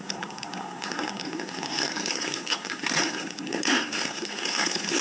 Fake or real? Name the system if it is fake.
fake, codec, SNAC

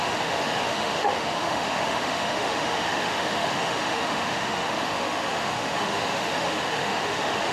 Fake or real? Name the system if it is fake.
fake, autoencoder, DAC-VAE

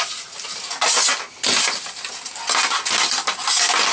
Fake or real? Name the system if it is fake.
real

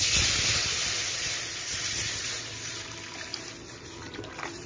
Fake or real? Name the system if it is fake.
real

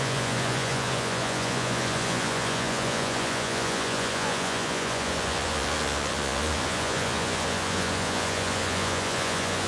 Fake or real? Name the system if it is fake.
fake, vocoder, Vocos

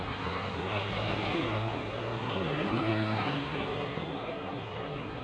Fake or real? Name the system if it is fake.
fake, codec, SNAC